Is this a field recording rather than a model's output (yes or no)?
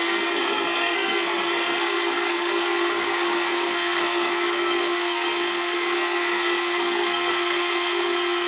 no